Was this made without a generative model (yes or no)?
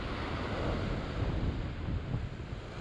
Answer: yes